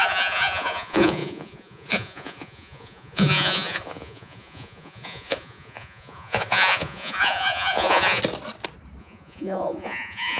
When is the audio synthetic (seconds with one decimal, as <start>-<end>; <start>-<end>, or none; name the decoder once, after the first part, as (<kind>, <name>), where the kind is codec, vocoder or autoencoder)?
0.0-8.2 (vocoder, Vocos); 9.0-10.4